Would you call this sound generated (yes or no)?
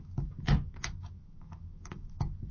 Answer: yes